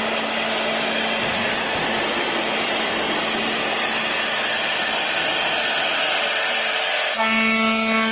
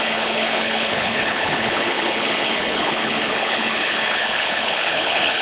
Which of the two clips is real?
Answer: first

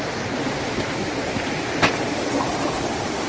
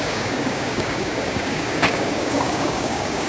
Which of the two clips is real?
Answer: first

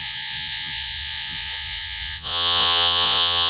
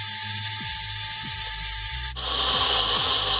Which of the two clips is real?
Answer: second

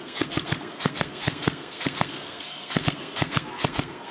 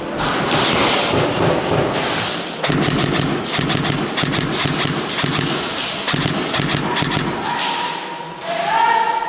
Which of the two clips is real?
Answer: second